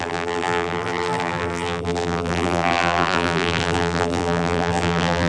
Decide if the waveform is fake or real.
fake